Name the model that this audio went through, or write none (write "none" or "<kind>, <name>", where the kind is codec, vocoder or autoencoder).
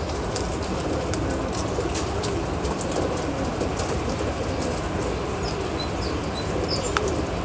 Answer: none